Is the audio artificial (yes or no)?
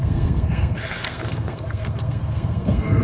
yes